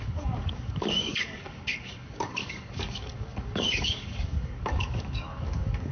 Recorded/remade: remade